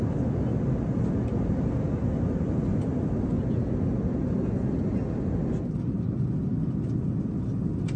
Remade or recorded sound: recorded